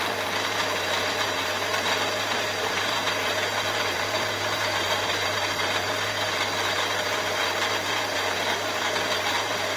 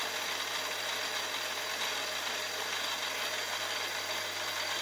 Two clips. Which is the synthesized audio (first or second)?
first